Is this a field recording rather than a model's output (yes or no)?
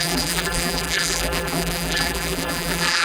no